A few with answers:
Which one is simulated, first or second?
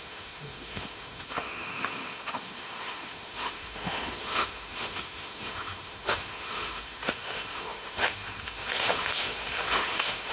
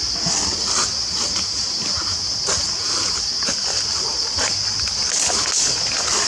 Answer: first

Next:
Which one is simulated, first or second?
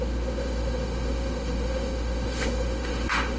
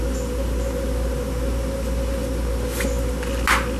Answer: first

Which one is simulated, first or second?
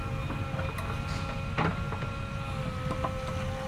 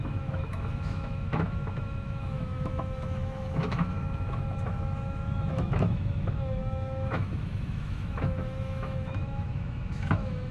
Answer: second